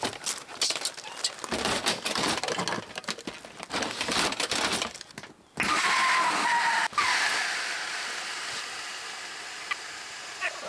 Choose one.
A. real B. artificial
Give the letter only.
A